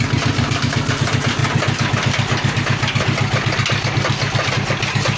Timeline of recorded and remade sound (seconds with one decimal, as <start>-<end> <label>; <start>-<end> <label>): 0.0-5.2 recorded